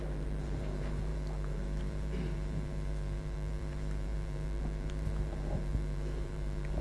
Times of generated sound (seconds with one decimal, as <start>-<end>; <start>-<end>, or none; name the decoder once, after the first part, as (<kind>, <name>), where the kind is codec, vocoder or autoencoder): 0.0-6.8 (vocoder, BigVGAN v2)